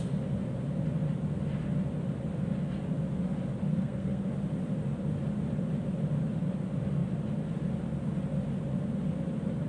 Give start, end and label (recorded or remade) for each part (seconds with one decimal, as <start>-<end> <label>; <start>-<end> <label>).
0.0-3.7 recorded; 3.7-4.3 remade; 4.3-9.7 recorded